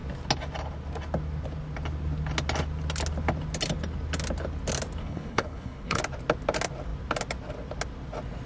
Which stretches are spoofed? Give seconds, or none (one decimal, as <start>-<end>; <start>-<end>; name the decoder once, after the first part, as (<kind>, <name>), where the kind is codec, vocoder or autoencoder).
5.0-6.0 (codec, HILCodec)